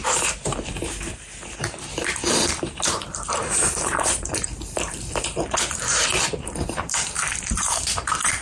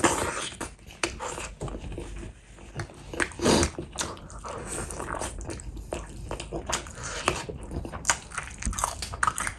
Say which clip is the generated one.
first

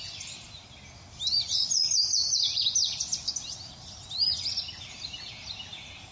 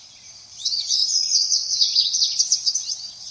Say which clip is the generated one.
second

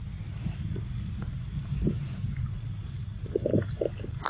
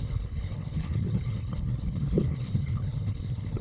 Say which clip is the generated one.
second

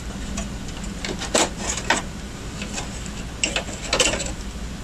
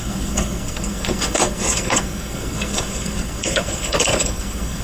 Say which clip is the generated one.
second